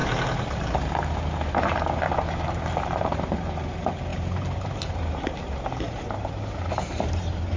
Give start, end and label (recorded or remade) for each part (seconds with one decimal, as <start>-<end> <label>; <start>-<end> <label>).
0.0-7.6 remade

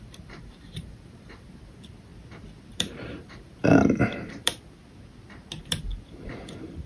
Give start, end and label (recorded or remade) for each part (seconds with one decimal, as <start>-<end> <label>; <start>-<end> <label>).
0.0-2.1 remade; 2.1-2.7 recorded; 2.7-4.8 remade; 4.8-5.6 recorded; 5.6-6.9 remade

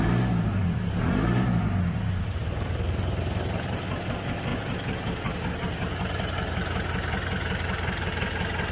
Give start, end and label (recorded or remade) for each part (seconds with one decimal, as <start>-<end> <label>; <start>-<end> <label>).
0.0-2.4 recorded; 2.4-3.2 remade; 3.2-4.5 recorded; 4.5-8.1 remade; 8.1-8.7 recorded

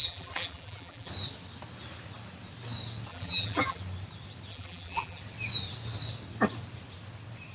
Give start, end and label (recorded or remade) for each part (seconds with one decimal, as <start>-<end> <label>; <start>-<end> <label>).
0.0-1.1 remade; 1.1-3.1 recorded; 3.1-3.8 remade; 3.8-4.5 recorded; 4.5-5.2 remade; 5.2-7.5 recorded

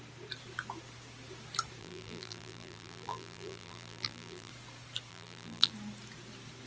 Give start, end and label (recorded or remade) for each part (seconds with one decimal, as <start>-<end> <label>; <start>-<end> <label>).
0.0-1.8 recorded; 1.8-4.5 remade; 4.5-5.1 recorded; 5.1-5.7 remade; 5.7-6.7 recorded